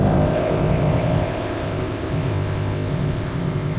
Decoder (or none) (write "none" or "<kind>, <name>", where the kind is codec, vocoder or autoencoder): codec, ZipCodec